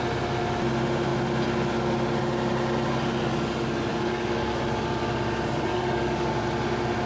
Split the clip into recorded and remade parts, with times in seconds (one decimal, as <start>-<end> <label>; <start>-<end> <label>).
0.0-3.9 recorded; 3.9-4.6 remade; 4.6-5.7 recorded; 5.7-6.3 remade; 6.3-7.1 recorded